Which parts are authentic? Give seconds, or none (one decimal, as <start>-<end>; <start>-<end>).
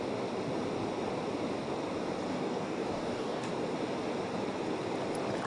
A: 0.0-2.3; 3.5-5.5